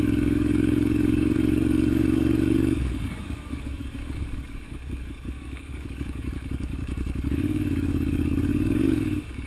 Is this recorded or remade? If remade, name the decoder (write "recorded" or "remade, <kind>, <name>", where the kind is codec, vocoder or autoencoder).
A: remade, codec, DAC